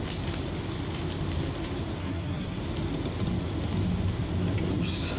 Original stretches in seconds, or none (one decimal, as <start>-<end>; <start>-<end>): 0.0-2.0; 2.6-5.2